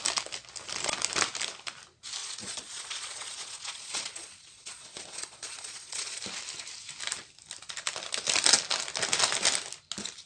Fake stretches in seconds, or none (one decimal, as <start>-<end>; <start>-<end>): 2.2-6.2